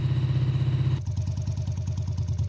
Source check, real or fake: real